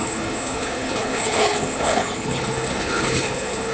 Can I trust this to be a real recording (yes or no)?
no